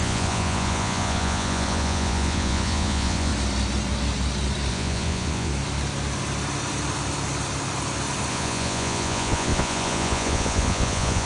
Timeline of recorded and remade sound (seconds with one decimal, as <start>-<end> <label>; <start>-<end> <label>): 0.0-3.3 remade; 3.3-4.7 recorded; 4.7-5.5 remade; 5.5-8.3 recorded; 8.3-11.3 remade